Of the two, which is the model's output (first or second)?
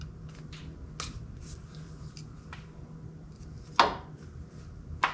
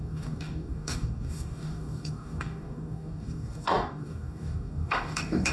second